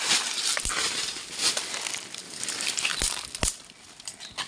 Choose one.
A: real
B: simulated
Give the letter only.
A